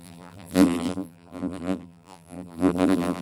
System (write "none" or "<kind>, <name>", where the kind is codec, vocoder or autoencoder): vocoder, BigVGAN v2